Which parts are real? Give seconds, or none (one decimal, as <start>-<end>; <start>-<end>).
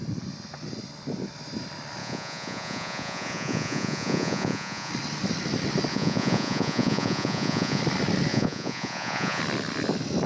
0.0-2.0; 4.9-5.9; 7.8-8.3; 9.4-10.3